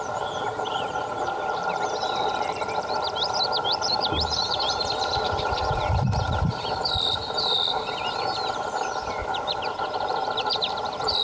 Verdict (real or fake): fake